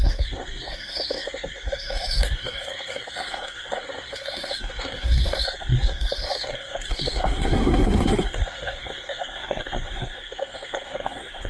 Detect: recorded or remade remade